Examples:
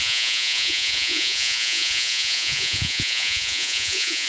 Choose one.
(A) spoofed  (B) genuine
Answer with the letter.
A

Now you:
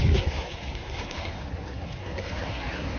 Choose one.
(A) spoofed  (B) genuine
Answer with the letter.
A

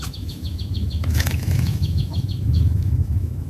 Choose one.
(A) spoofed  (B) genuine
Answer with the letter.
A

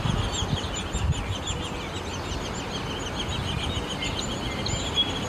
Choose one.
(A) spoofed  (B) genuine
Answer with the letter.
B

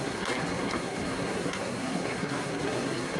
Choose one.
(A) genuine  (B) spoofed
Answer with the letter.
B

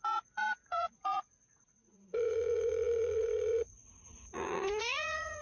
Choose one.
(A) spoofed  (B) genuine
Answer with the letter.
A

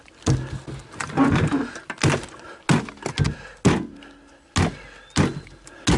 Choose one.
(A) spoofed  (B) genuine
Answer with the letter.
B